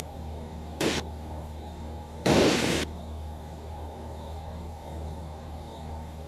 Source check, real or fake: fake